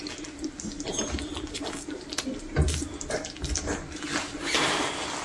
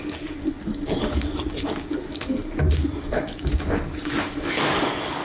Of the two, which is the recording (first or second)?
first